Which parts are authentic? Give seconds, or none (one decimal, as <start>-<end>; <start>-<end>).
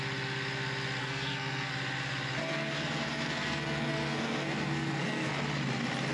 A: 0.0-1.0; 1.7-2.4; 5.3-6.1